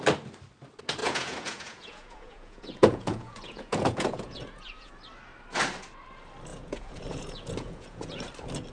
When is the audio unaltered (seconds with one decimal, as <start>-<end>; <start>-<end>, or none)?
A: 0.0-1.0; 4.9-6.5; 8.2-8.7